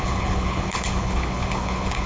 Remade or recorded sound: remade